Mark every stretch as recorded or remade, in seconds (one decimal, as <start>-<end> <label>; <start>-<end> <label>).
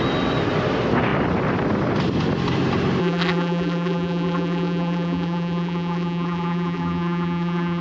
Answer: 0.0-3.0 recorded; 3.0-7.8 remade